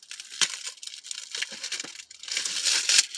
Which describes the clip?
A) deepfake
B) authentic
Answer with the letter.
B